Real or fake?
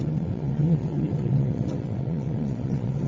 fake